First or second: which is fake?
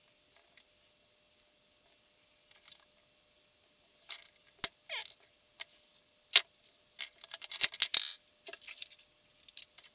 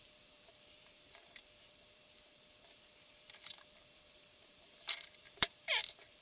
second